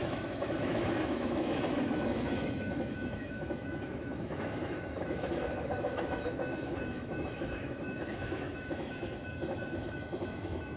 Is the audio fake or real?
fake